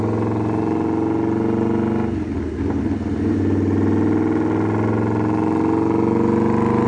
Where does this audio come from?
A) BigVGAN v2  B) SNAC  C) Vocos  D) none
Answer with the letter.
D